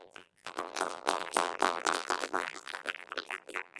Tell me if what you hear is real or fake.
fake